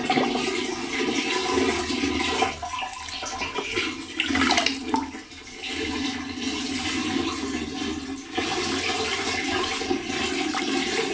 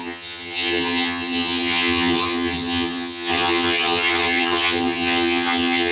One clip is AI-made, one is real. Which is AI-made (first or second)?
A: second